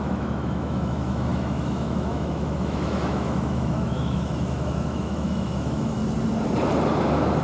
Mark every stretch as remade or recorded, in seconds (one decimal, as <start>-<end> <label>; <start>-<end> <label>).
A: 0.0-6.0 remade; 6.0-7.4 recorded